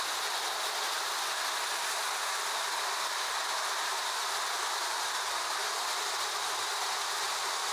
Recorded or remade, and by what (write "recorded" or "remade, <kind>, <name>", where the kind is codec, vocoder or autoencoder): recorded